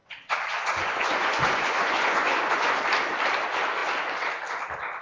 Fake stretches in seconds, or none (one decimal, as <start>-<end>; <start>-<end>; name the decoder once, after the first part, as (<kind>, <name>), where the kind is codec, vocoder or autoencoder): 0.0-2.8 (vocoder, Vocos)